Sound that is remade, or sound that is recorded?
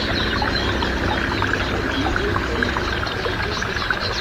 recorded